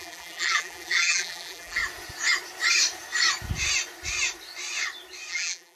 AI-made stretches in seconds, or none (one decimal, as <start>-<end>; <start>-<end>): 0.0-1.8; 5.3-5.8